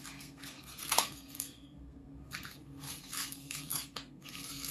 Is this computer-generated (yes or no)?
yes